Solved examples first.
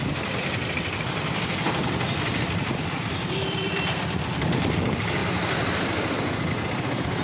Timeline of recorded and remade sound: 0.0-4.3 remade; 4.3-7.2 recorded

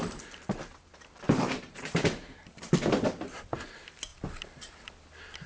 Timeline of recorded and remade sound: 0.0-2.7 remade; 2.7-4.1 recorded; 4.1-4.6 remade; 4.6-5.5 recorded

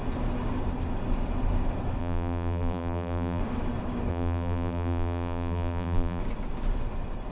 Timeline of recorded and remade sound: 0.0-2.0 recorded; 2.0-3.4 remade; 3.4-4.1 recorded; 4.1-6.2 remade; 6.2-7.3 recorded

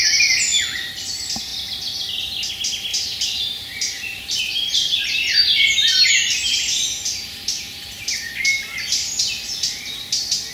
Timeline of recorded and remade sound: 0.0-2.9 recorded; 2.9-6.1 remade; 6.1-10.5 recorded

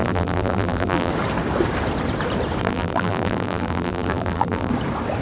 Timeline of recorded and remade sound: 0.0-1.1 remade; 1.1-2.6 recorded; 2.6-4.7 remade; 4.7-5.2 recorded